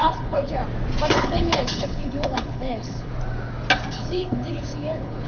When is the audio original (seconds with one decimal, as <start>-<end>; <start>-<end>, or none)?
0.6-1.1; 3.1-3.9